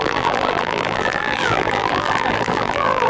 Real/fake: fake